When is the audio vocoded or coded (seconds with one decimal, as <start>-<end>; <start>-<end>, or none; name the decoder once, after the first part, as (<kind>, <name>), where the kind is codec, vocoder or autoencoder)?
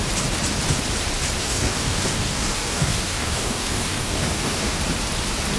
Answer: 1.4-4.8 (codec, DAC)